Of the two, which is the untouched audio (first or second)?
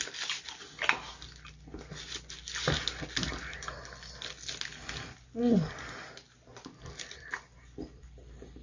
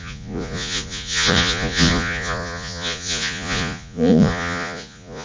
first